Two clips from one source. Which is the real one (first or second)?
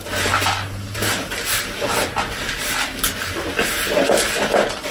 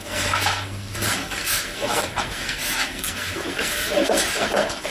first